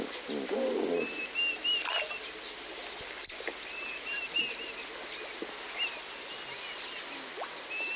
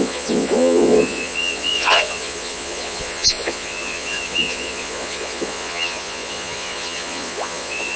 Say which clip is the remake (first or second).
second